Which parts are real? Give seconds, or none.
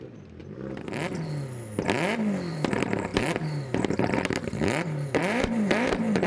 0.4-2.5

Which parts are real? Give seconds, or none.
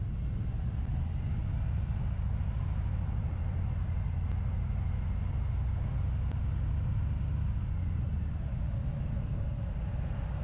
0.0-10.4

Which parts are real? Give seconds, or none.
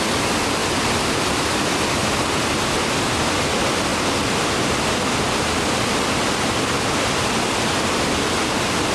0.0-0.6; 1.3-8.9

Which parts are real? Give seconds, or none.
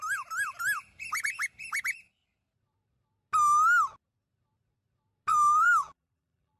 0.0-5.3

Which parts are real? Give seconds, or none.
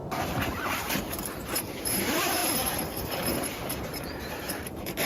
0.0-0.8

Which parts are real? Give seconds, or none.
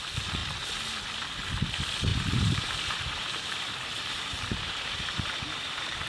0.0-2.1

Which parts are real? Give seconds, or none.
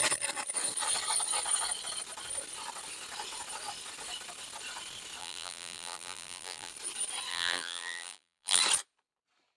0.0-5.2; 6.7-7.3; 8.6-9.6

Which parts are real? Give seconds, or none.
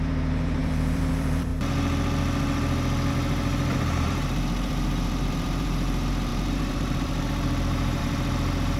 1.5-3.1